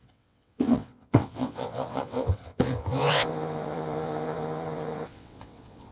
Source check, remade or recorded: remade